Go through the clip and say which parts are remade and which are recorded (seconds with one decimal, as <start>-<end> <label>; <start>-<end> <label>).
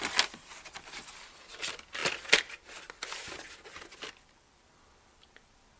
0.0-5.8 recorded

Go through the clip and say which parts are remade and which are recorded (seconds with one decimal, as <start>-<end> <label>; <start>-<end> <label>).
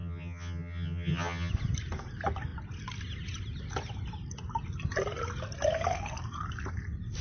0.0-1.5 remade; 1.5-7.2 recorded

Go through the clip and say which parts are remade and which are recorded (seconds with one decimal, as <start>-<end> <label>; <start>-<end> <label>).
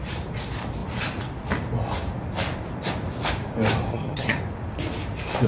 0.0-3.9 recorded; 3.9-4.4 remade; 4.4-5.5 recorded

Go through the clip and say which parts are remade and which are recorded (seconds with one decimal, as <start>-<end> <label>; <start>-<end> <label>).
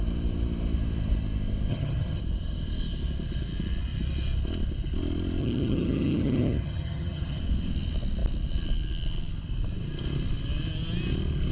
0.0-1.7 recorded; 1.7-2.2 remade; 2.2-5.4 recorded; 5.4-7.4 remade; 7.4-11.5 recorded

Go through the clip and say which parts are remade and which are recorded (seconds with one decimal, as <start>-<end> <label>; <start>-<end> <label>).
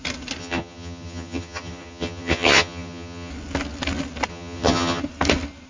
0.0-0.4 recorded; 0.4-3.3 remade; 3.3-4.3 recorded; 4.3-5.0 remade; 5.0-5.7 recorded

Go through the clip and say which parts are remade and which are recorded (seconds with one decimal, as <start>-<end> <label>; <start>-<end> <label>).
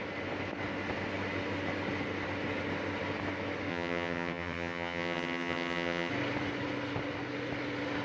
0.0-3.7 recorded; 3.7-6.1 remade; 6.1-8.0 recorded